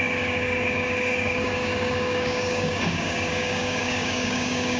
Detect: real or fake fake